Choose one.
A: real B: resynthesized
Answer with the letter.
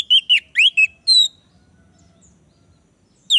A